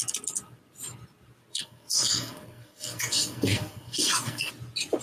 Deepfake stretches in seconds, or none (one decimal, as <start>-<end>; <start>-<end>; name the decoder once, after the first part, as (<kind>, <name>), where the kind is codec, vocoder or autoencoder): 1.5-4.5 (codec, SNAC)